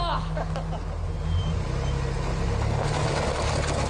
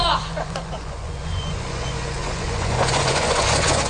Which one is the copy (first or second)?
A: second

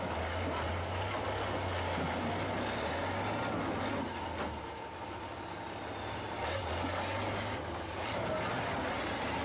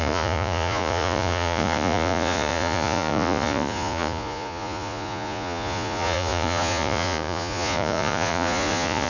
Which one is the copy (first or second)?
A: second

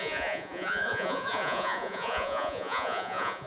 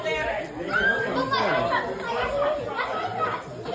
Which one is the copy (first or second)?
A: first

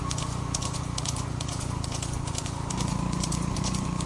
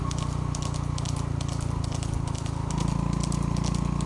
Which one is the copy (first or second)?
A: first